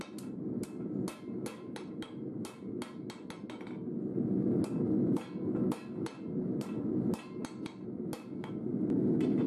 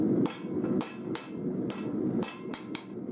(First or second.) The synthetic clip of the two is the second